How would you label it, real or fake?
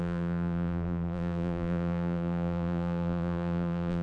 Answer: fake